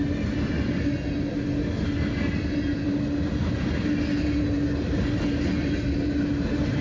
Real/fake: real